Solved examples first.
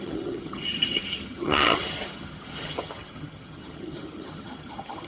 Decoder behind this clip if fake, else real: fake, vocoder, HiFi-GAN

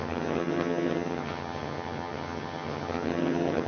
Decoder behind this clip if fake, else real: fake, vocoder, HiFi-GAN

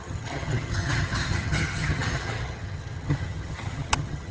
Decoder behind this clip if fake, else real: fake, vocoder, HiFi-GAN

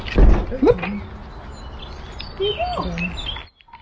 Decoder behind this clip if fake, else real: real